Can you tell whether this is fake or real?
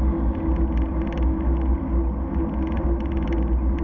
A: real